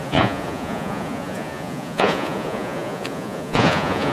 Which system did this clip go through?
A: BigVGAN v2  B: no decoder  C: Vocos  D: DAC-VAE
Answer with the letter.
C